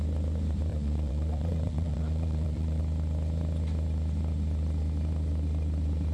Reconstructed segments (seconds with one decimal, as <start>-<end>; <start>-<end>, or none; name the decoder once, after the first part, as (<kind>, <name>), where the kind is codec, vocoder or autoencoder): 0.7-2.8 (vocoder, Vocos)